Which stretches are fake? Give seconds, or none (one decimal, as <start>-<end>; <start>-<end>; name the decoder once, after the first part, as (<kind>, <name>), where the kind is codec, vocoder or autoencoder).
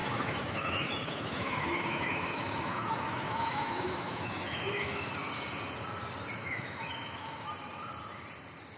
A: 0.0-5.1 (autoencoder, DAC-VAE); 6.4-7.5